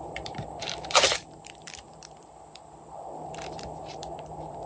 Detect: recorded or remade remade